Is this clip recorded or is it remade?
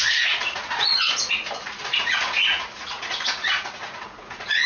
remade